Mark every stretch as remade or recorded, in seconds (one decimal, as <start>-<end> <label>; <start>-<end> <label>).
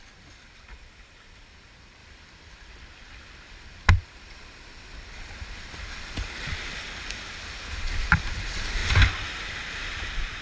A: 0.0-2.0 recorded; 2.0-5.6 remade; 5.6-10.4 recorded